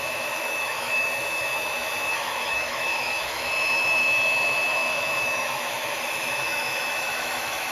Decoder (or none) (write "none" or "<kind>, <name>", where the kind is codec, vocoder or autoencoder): autoencoder, DAC-VAE